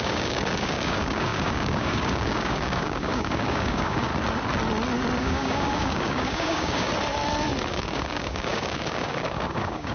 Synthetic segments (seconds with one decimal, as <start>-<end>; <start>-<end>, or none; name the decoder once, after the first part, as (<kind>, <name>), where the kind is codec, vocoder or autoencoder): 0.0-4.1 (codec, DAC); 5.2-6.9; 7.7-9.9